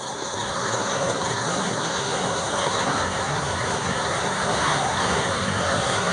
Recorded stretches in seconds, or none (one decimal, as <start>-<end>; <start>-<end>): none